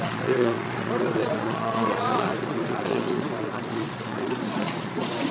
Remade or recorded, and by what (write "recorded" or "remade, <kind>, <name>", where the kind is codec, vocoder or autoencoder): remade, vocoder, Vocos